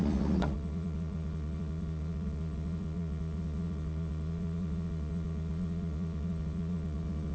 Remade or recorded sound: remade